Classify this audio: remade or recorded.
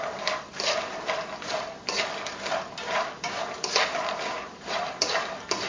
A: remade